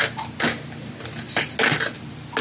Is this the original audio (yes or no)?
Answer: yes